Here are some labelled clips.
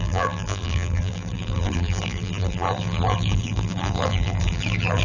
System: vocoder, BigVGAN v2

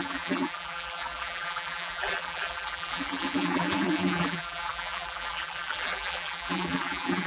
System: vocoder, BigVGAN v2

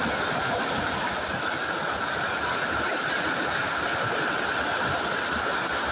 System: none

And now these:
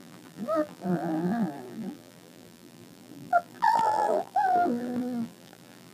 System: vocoder, BigVGAN v2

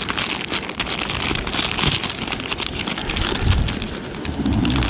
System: none